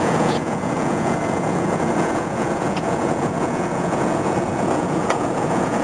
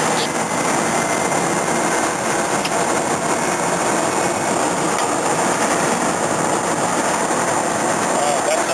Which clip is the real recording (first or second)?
second